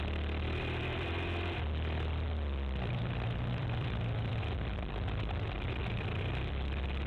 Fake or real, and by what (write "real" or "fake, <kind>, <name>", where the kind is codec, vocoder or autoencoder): fake, vocoder, BigVGAN v2